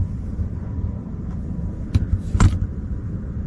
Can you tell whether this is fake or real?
real